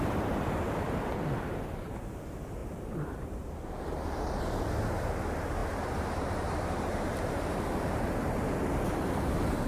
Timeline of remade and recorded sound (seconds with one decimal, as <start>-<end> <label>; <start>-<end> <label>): 0.0-2.6 recorded; 2.6-4.4 remade; 4.4-5.6 recorded; 5.6-9.7 remade